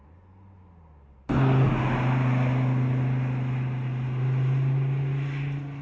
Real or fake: real